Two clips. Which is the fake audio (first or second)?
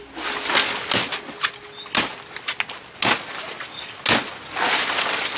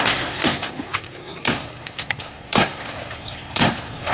second